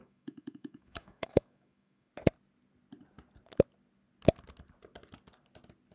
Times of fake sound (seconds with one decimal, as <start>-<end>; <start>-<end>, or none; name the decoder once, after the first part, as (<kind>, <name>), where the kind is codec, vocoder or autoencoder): 0.0-2.1 (autoencoder, DAC-VAE)